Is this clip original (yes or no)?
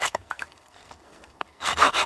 no